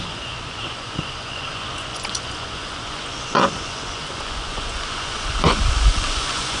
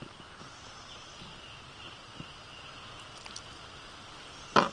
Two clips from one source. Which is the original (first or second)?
second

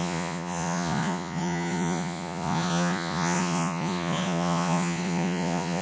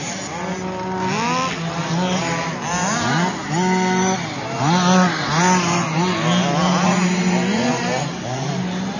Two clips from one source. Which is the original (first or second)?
second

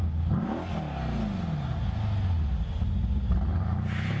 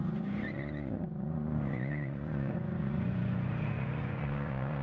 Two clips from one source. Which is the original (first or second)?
first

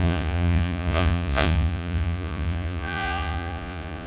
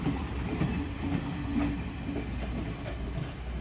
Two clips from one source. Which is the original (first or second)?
second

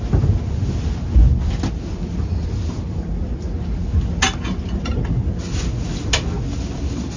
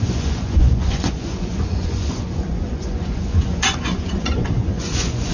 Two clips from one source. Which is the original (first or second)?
first